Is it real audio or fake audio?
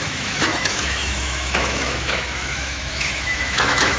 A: fake